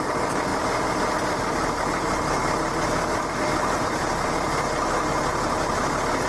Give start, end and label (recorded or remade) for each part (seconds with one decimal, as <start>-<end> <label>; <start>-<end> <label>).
0.0-6.3 recorded